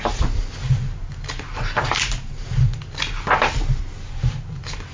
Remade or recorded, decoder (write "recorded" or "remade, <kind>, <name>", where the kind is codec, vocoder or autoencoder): recorded